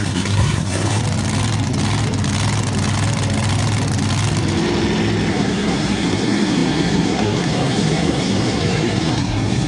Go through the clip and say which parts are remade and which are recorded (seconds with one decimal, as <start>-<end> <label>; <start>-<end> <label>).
0.0-1.0 remade; 1.0-5.3 recorded; 5.3-9.7 remade